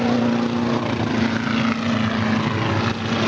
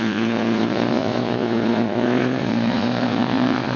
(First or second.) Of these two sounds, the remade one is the second